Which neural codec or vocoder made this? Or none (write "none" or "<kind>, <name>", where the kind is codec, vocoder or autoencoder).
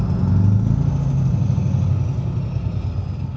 none